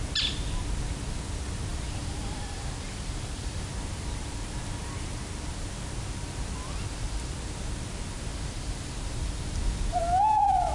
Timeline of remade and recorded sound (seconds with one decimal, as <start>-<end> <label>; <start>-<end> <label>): 0.0-1.7 recorded; 1.7-3.7 remade; 3.7-6.7 recorded; 6.7-7.3 remade; 7.3-8.3 recorded; 8.3-10.0 remade; 10.0-10.7 recorded